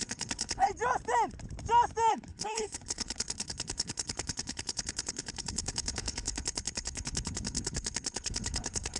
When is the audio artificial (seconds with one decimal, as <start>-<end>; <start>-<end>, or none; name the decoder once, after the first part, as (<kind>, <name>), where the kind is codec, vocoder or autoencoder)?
0.0-0.7 (codec, HILCodec); 2.1-9.0

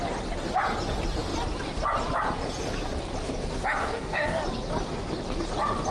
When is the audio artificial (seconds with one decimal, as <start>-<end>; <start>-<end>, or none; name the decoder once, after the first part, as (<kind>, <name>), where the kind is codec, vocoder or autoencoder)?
3.8-4.4 (codec, DAC)

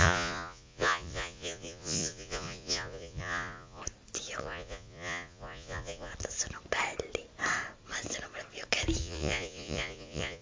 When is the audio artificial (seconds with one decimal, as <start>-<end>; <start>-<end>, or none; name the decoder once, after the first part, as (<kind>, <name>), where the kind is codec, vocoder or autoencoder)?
0.0-3.8 (vocoder, Vocos); 4.4-6.1; 9.0-10.4